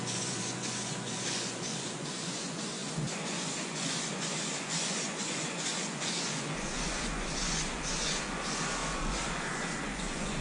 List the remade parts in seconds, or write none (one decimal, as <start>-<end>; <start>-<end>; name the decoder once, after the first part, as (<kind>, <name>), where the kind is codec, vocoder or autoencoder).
0.0-10.4 (vocoder, Vocos)